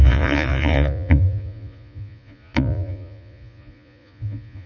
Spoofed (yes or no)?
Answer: yes